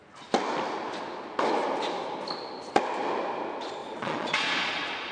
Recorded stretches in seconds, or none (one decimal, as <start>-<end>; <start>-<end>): 0.0-3.8